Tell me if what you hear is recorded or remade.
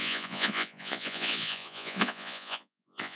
remade